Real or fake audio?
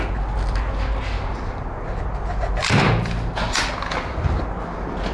real